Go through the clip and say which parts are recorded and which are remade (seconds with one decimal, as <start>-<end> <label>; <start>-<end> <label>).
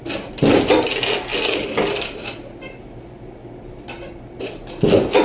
0.0-5.2 recorded